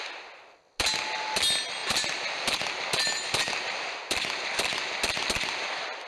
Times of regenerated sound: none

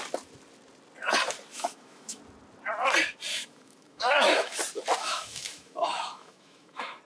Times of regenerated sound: 1.5-2.2; 3.3-4.6; 5.0-7.0